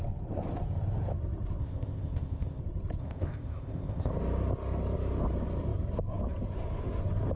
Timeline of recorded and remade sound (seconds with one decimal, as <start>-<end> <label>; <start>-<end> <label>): 0.0-1.6 recorded; 1.6-2.6 remade; 2.6-3.0 recorded; 3.0-4.1 remade; 4.1-7.4 recorded